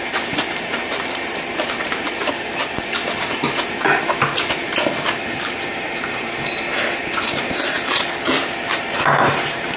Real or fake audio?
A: fake